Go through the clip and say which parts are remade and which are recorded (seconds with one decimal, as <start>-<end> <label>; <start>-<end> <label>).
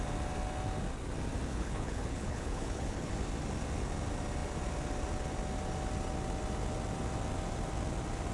0.0-1.5 recorded; 1.5-3.1 remade; 3.1-8.3 recorded